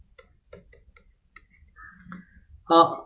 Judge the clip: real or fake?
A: real